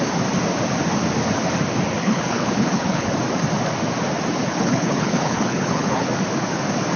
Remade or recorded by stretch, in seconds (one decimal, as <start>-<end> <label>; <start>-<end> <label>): 0.0-2.0 recorded; 2.0-3.1 remade; 3.1-4.4 recorded; 4.4-6.1 remade; 6.1-7.0 recorded